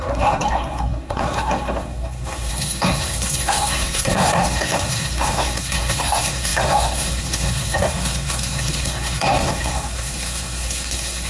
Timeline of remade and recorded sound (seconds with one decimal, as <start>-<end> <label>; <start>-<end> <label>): 0.0-11.3 remade